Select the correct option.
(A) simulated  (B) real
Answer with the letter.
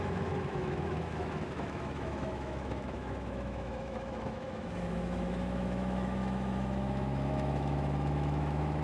A